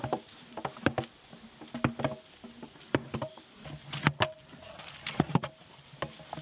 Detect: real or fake real